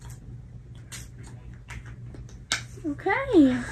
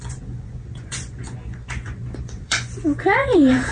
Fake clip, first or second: second